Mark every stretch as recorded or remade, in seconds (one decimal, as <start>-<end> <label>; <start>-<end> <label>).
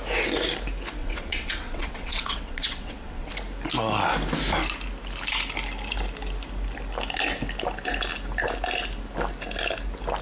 0.0-1.0 recorded; 1.0-3.3 remade; 3.3-10.2 recorded